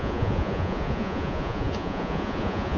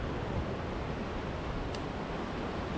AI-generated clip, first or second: first